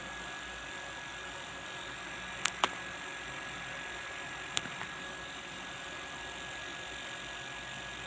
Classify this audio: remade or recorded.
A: recorded